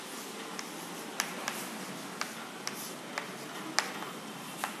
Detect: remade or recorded recorded